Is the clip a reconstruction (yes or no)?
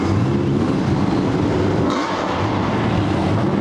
no